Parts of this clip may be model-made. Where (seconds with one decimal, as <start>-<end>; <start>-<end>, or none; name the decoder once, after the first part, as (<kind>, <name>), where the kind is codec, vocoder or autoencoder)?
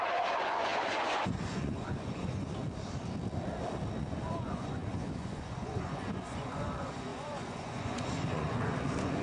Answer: 0.0-2.6 (vocoder, Vocos); 4.0-9.2